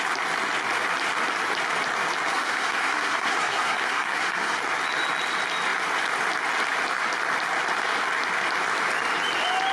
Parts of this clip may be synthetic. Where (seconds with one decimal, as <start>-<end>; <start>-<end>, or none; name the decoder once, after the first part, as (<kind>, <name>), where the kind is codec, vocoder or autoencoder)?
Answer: 2.3-4.6 (codec, SNAC)